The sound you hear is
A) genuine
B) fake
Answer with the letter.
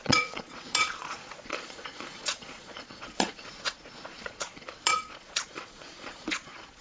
B